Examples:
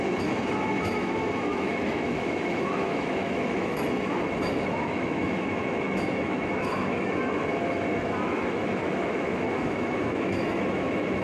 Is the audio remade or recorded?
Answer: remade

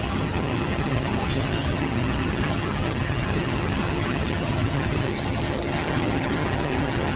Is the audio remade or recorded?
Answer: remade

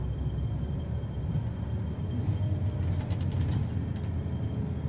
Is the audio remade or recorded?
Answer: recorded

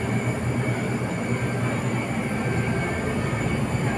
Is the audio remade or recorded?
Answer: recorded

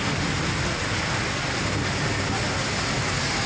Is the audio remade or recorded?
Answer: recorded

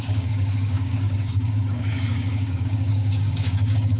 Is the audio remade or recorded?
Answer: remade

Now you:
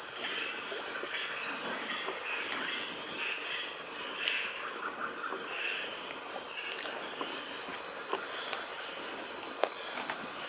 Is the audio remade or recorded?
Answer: recorded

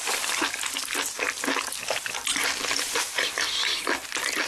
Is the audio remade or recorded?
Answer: recorded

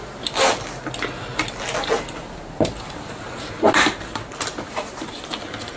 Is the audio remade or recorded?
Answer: recorded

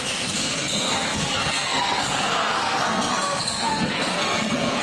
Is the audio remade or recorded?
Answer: remade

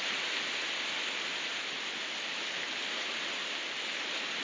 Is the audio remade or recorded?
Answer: recorded